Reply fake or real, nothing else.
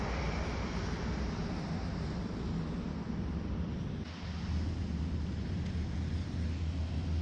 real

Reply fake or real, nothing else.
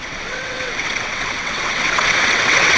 fake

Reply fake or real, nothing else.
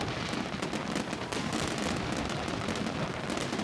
real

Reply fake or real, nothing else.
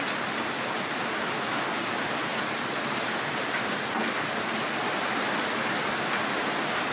real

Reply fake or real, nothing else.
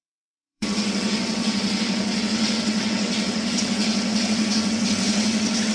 fake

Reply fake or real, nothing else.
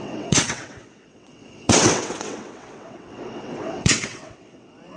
fake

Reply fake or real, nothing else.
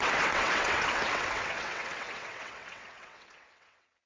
fake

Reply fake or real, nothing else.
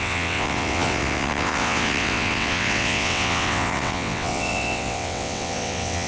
fake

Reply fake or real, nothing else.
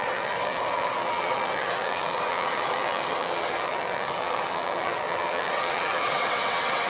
fake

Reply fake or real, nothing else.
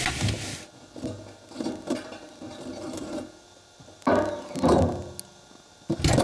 real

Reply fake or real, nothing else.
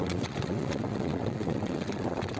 fake